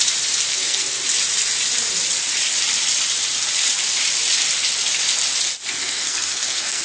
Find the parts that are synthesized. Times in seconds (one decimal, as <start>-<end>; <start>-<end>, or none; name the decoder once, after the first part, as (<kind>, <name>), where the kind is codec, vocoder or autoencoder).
0.5-1.0 (codec, SNAC); 5.8-6.8